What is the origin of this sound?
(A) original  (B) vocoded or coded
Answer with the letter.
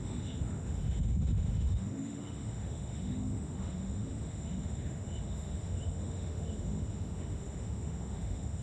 B